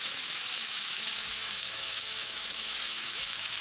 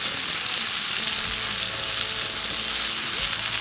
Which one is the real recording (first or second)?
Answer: second